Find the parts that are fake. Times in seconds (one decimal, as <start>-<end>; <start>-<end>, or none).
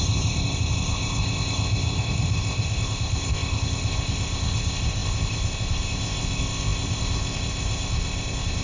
0.0-8.6